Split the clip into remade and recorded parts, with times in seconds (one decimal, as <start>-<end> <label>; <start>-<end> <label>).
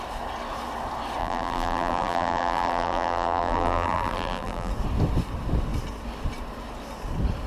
0.0-1.2 recorded; 1.2-4.7 remade; 4.7-7.5 recorded